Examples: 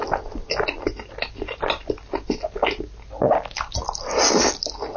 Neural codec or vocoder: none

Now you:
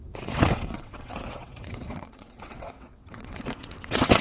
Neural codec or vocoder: vocoder, WaveNeXt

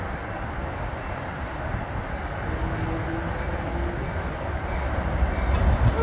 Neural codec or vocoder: none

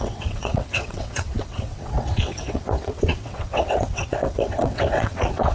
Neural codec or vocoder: vocoder, WaveNeXt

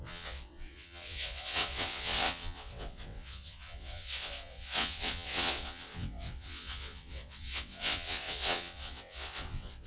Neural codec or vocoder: vocoder, WaveNeXt